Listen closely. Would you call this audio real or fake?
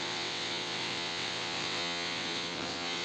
fake